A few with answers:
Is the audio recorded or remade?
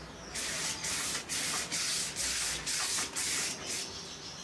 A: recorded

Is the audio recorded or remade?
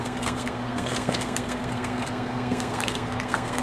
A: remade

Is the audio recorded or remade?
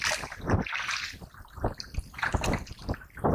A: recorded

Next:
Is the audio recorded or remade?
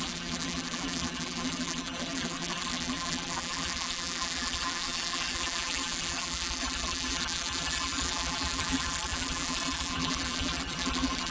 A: remade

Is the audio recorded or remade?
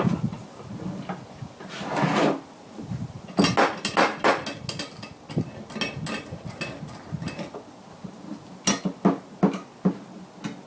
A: recorded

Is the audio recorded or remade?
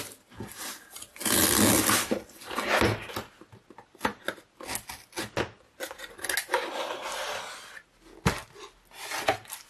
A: recorded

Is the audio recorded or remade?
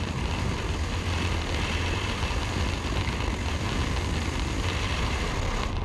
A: recorded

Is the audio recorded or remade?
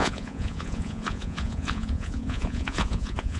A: remade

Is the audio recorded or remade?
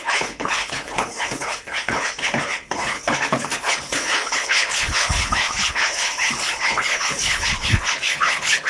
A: remade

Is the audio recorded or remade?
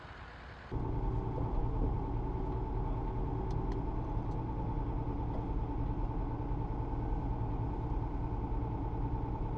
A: recorded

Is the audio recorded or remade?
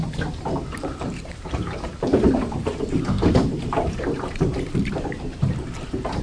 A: remade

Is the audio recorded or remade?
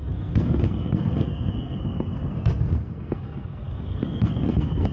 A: remade